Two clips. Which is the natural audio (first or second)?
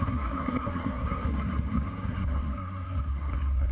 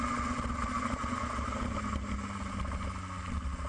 second